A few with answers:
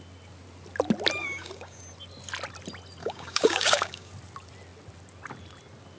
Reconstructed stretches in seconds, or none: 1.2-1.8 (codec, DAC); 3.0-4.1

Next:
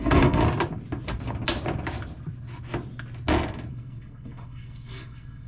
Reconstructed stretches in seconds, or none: 0.0-0.4 (codec, SNAC); 3.7-5.5

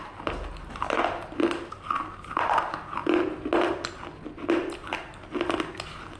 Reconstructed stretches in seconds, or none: none

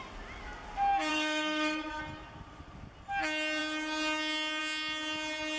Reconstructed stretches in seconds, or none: 1.1-2.0 (codec, SNAC)

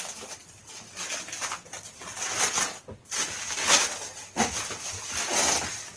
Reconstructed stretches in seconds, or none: none

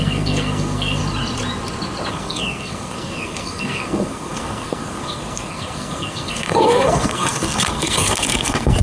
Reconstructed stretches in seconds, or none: 0.0-1.0 (codec, SNAC); 2.1-8.8

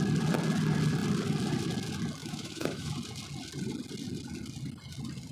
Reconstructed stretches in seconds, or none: 2.2-2.9 (autoencoder, DAC-VAE)